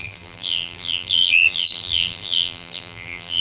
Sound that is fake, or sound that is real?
fake